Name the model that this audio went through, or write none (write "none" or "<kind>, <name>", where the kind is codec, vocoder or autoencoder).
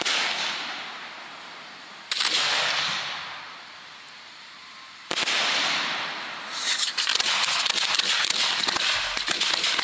none